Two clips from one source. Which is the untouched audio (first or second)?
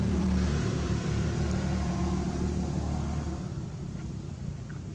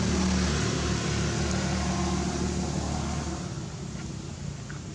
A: second